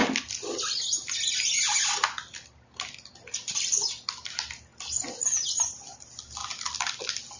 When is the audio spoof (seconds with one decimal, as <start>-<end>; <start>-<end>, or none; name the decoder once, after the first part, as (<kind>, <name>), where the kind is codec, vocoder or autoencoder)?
none